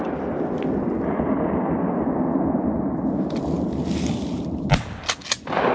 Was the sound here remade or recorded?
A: recorded